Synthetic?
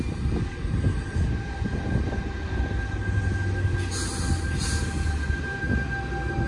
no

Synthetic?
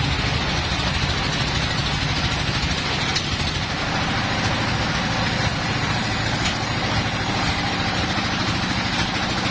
no